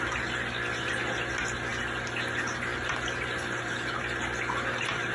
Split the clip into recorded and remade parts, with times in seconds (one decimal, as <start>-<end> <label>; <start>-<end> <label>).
0.0-5.1 recorded